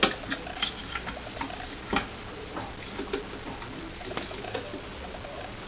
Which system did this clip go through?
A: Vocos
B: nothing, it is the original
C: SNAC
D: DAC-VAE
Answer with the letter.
B